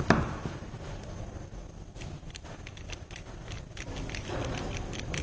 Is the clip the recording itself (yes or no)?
yes